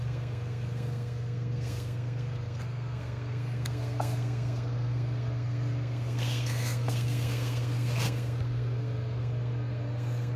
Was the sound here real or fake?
fake